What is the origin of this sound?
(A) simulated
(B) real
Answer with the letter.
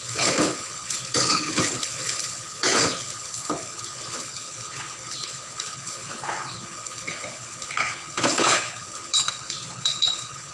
A